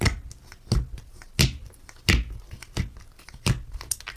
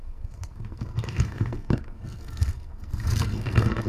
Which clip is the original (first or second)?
first